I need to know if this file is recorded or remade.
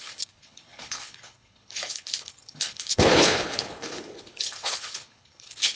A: remade